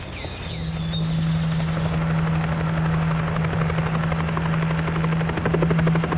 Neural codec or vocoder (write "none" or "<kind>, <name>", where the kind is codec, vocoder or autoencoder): none